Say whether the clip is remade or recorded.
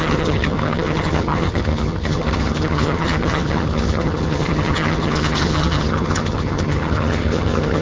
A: remade